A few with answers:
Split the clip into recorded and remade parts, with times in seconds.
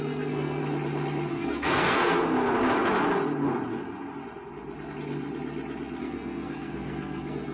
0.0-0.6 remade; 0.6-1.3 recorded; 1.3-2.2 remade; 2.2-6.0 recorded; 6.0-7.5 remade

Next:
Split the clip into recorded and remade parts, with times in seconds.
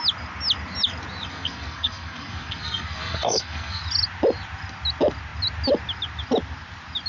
0.0-1.3 recorded; 1.3-3.8 remade; 3.8-7.1 recorded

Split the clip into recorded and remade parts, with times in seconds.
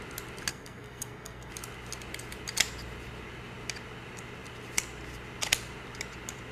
0.0-0.5 recorded; 0.5-1.5 remade; 1.5-6.5 recorded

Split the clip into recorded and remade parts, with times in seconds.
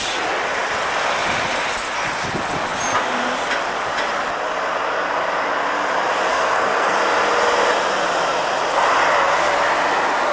0.0-6.3 recorded; 6.3-7.0 remade; 7.0-10.3 recorded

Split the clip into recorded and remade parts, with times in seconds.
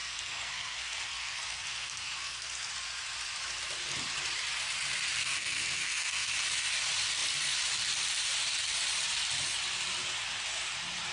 0.0-2.7 remade; 2.7-5.2 recorded; 5.2-6.3 remade; 6.3-11.1 recorded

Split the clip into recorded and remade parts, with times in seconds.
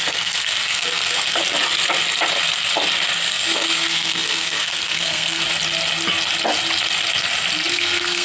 0.0-1.4 remade; 1.4-3.3 recorded; 3.3-5.4 remade; 5.4-7.7 recorded; 7.7-8.2 remade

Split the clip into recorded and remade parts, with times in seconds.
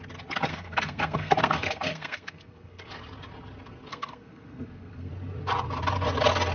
0.0-0.5 recorded; 0.5-2.9 remade; 2.9-3.9 recorded; 3.9-5.1 remade; 5.1-6.5 recorded